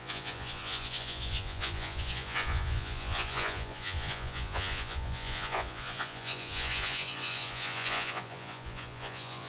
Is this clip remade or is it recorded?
remade